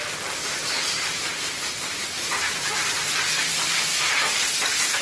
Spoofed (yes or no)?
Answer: yes